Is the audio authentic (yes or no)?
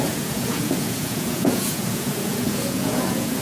no